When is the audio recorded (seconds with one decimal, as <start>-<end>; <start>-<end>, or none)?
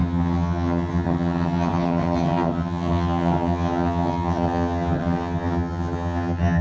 none